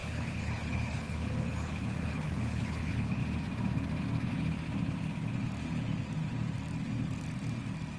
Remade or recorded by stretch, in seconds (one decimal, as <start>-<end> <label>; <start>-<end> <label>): 0.0-3.2 remade; 3.2-8.0 recorded